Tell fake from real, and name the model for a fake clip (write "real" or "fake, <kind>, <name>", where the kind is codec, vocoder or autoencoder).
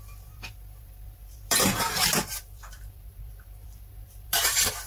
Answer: fake, vocoder, BigVGAN v2